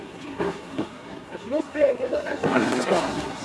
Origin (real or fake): fake